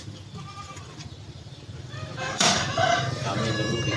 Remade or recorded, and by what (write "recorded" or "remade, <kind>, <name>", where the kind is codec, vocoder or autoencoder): remade, vocoder, BigVGAN v2